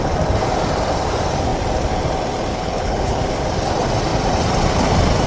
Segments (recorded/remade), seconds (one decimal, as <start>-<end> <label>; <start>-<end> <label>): 0.0-2.5 recorded; 2.5-3.2 remade; 3.2-5.3 recorded